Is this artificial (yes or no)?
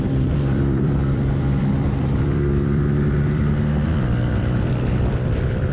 yes